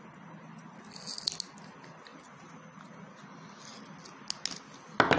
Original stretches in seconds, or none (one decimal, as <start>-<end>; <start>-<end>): 0.0-5.2